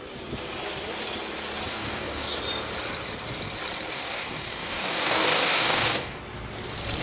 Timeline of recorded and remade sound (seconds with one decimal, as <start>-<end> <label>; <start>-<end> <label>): 0.0-1.7 recorded; 1.7-2.4 remade; 2.4-3.9 recorded; 3.9-6.2 remade; 6.2-7.0 recorded